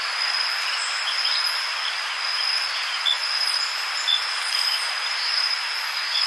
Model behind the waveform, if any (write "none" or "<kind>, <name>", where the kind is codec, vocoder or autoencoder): none